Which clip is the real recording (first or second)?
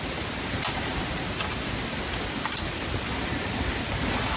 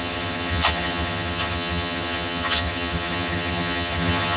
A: first